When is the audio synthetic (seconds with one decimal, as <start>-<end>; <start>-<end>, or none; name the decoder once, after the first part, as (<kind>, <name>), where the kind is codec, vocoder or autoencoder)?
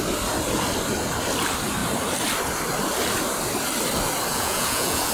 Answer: 4.3-5.1 (vocoder, Vocos)